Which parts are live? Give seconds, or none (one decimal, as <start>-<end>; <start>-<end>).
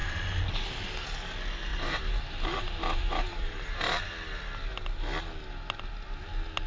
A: 0.0-1.7; 4.0-6.7